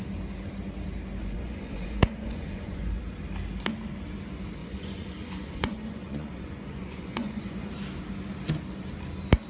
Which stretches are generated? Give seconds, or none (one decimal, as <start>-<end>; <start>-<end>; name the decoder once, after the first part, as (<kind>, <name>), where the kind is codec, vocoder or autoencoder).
1.2-3.0 (vocoder, Vocos); 4.6-7.7